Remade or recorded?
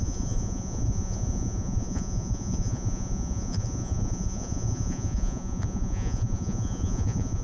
remade